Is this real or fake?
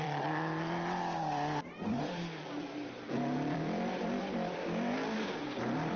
fake